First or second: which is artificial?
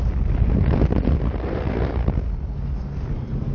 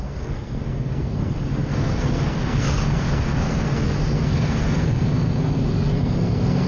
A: second